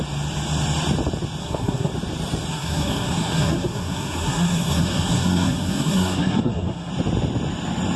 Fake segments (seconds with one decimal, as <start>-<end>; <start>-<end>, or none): 1.4-1.9; 2.5-6.9